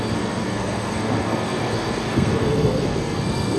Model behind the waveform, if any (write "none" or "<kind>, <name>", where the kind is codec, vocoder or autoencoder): codec, SNAC